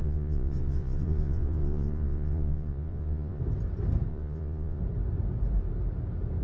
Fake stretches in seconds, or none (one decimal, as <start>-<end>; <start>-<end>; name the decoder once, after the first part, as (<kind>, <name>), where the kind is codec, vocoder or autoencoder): 0.0-3.4 (vocoder, Vocos); 4.1-4.8